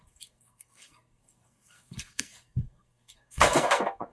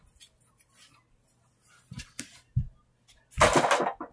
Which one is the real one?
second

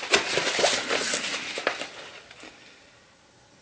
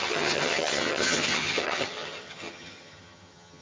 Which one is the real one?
first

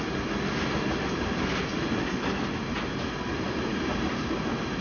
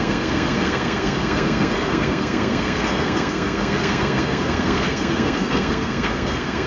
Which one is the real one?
first